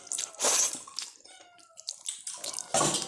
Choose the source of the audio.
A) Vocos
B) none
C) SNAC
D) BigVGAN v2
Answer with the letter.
B